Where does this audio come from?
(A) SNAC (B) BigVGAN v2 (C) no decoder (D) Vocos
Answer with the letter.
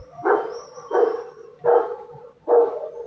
C